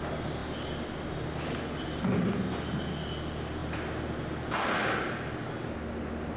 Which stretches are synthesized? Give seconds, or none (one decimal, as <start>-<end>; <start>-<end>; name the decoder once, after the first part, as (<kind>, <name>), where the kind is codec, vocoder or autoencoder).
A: none